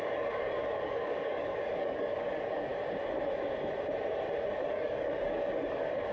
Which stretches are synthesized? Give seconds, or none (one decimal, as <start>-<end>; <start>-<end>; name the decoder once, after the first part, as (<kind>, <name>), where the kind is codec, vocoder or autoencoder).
0.0-2.7 (codec, DAC); 4.6-6.1